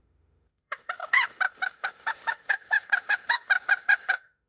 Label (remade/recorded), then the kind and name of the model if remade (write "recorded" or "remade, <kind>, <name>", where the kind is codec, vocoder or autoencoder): remade, autoencoder, DAC-VAE